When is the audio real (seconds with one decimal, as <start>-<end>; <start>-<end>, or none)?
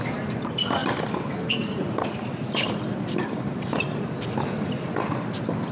0.0-5.7